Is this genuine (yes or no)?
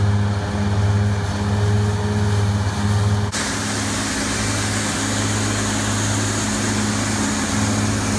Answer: yes